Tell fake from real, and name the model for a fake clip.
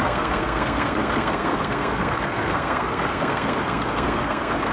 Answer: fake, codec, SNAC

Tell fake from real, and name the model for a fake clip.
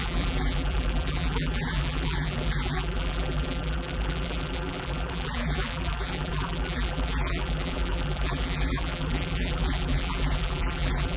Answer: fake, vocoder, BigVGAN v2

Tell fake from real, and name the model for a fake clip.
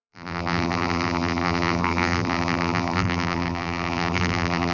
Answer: fake, vocoder, BigVGAN v2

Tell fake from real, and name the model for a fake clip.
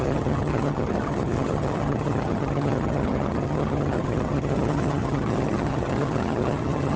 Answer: fake, vocoder, HiFi-GAN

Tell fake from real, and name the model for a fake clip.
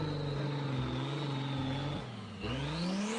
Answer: real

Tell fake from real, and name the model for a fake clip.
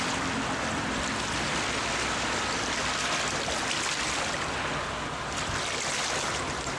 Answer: real